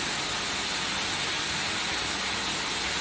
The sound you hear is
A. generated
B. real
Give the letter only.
B